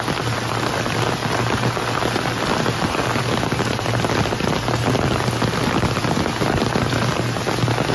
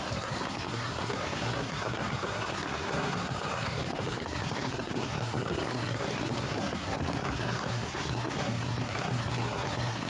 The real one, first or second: first